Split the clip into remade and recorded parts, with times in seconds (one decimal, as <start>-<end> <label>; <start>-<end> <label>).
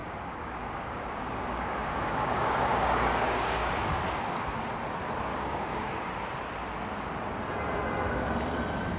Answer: 0.0-3.7 remade; 3.7-5.3 recorded; 5.3-6.1 remade; 6.1-9.0 recorded